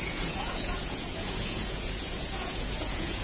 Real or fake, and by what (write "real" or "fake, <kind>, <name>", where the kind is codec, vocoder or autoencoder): fake, vocoder, Vocos